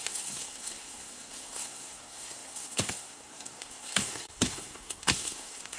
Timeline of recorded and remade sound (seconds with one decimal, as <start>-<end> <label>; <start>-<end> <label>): 0.0-5.8 remade